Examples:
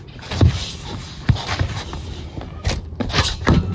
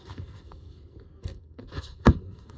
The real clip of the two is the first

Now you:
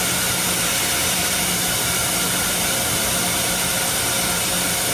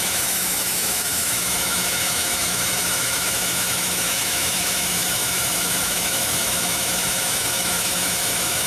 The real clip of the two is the first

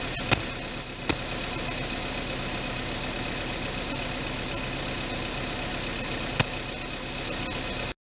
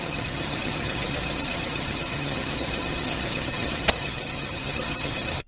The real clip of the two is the first